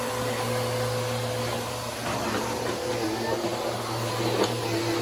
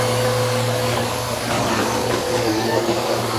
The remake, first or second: second